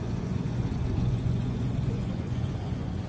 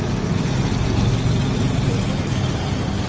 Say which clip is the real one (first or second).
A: second